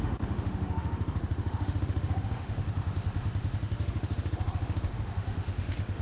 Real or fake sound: fake